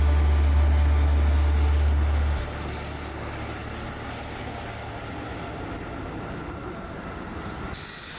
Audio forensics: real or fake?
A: real